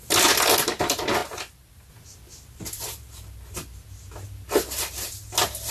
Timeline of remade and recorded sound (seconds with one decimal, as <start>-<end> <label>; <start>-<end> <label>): 0.0-5.7 recorded